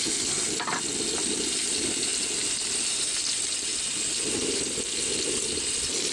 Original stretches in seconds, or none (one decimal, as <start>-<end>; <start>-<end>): 0.0-6.1